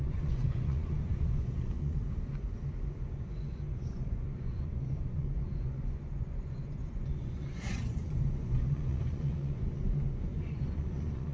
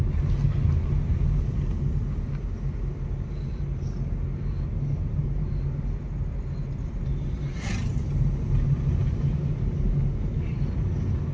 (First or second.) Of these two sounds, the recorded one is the second